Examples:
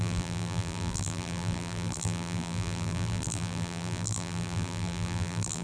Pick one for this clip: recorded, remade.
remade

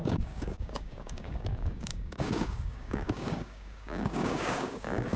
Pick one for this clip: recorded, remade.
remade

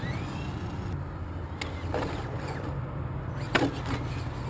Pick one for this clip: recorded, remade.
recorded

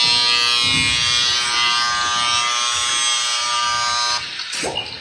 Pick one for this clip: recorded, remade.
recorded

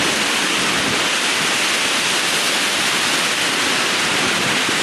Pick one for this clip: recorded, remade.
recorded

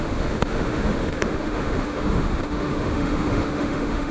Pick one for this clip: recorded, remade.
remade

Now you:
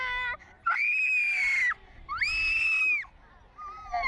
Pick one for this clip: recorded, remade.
recorded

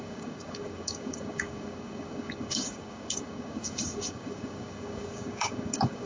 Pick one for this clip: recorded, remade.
remade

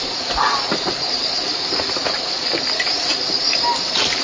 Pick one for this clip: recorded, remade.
recorded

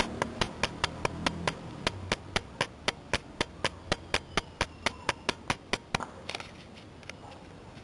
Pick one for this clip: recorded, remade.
recorded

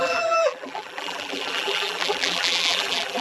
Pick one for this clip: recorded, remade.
remade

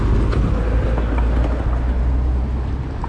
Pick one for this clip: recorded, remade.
recorded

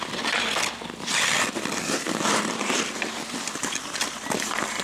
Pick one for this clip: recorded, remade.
remade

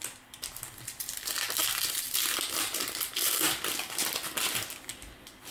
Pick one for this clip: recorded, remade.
recorded